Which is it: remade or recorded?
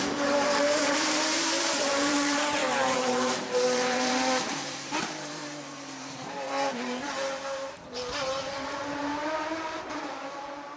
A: remade